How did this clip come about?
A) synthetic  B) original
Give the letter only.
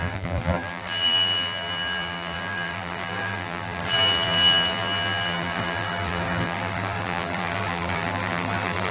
A